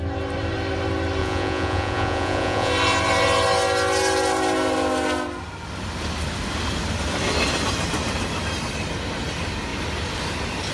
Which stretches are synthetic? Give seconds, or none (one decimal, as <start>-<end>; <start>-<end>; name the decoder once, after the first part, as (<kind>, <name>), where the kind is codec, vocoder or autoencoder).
1.2-2.7 (vocoder, Vocos)